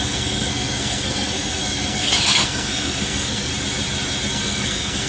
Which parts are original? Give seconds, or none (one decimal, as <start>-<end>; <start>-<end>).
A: 3.5-4.3